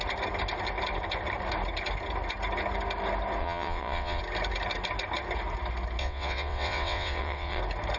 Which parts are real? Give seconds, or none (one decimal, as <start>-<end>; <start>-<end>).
0.0-3.4; 4.2-6.0; 7.6-8.0